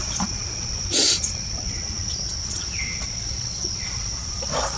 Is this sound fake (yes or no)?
yes